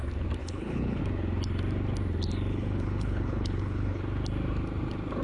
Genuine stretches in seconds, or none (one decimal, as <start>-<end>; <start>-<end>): 0.0-0.4; 1.0-2.5; 4.0-5.2